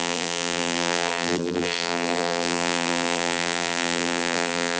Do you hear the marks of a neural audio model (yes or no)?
yes